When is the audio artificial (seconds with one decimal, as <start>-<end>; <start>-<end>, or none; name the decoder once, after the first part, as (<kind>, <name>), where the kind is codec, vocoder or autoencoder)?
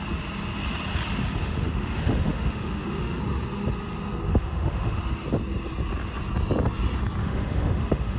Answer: 1.4-3.2 (autoencoder, DAC-VAE); 4.3-5.0; 7.2-8.2